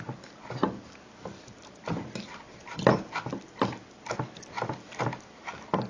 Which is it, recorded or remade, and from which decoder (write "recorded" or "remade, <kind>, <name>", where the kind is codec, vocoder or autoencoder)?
recorded